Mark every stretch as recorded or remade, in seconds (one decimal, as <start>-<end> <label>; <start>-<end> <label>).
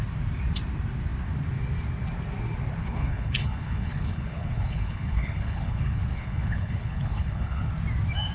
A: 0.0-2.8 recorded; 2.8-7.7 remade; 7.7-8.3 recorded